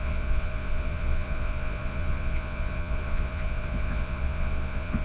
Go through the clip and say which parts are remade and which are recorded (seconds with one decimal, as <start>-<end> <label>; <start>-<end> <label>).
0.0-5.0 remade